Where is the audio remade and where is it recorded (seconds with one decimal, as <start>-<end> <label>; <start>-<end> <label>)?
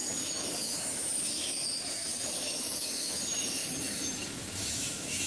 0.0-3.2 remade; 3.2-3.6 recorded; 3.6-5.3 remade